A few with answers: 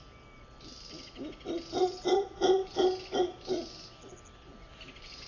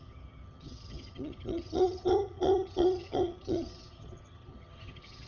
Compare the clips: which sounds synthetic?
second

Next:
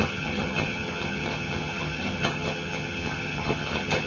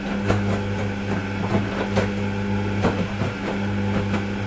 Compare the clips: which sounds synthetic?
first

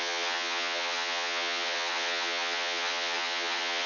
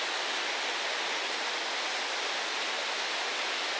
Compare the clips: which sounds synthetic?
first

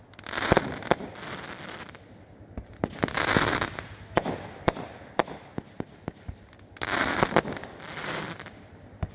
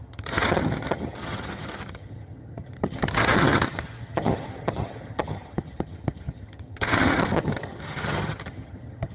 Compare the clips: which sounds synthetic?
second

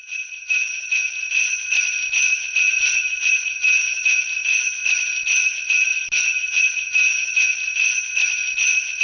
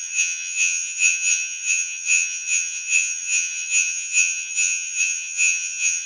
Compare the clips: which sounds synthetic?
second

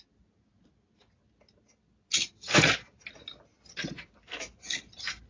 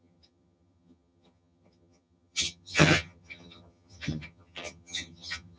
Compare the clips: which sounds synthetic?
second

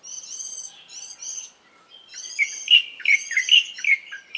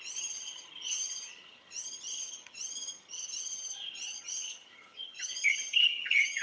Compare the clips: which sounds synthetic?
second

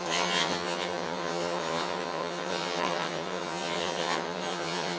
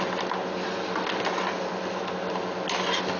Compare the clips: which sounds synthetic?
first